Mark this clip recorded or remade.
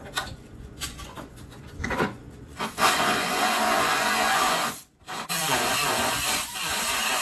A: remade